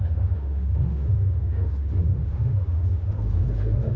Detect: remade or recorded remade